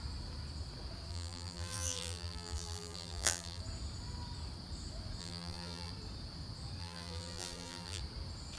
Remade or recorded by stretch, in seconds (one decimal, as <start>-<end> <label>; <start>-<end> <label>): 0.0-1.1 recorded; 1.1-3.6 remade; 3.6-5.2 recorded; 5.2-5.9 remade; 5.9-6.8 recorded; 6.8-8.0 remade; 8.0-8.6 recorded